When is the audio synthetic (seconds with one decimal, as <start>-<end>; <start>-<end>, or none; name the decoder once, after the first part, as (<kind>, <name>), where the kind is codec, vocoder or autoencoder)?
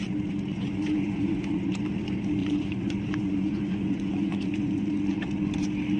0.5-1.8 (vocoder, Vocos); 2.4-5.2